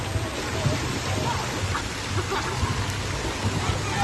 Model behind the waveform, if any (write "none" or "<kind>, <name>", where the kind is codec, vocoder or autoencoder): none